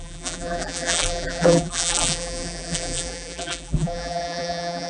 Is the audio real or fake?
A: fake